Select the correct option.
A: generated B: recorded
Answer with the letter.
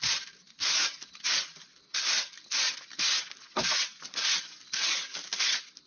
B